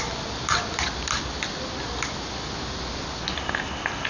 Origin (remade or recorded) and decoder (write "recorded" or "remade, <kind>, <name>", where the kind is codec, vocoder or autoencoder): recorded